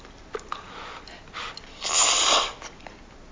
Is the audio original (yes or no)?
yes